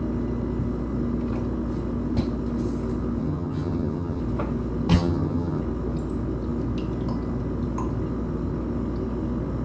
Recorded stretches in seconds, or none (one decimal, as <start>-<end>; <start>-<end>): 0.0-3.2; 4.2-4.9; 5.6-9.6